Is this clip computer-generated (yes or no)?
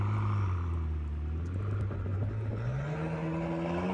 no